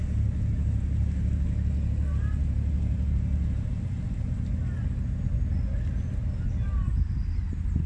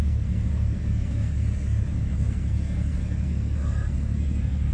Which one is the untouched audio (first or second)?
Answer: first